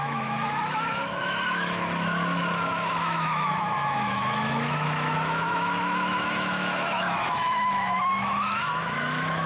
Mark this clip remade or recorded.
remade